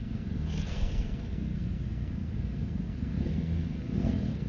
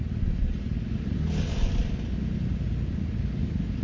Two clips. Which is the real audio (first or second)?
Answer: second